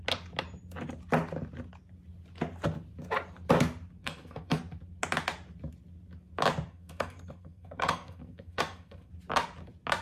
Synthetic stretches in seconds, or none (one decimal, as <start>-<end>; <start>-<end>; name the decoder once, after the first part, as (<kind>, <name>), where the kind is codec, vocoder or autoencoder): 4.0-4.6 (codec, SNAC); 6.7-9.1